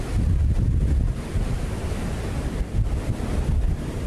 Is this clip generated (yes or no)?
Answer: no